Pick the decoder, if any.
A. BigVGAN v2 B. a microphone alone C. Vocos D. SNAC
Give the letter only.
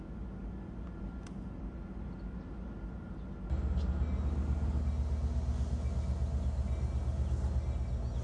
B